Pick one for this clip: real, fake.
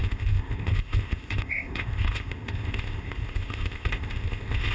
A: fake